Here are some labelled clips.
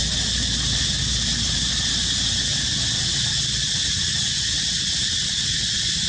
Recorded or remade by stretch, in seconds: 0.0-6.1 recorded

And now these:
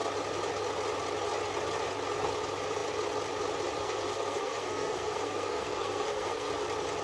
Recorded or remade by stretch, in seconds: 0.0-3.8 recorded; 3.8-6.5 remade; 6.5-7.0 recorded

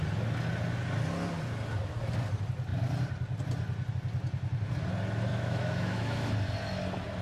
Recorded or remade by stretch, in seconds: 0.0-5.3 recorded; 5.3-6.3 remade; 6.3-7.2 recorded

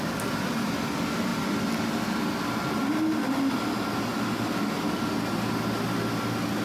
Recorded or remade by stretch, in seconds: 0.0-6.6 recorded